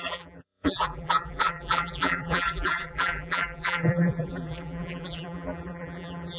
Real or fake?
fake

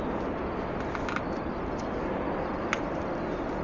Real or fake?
real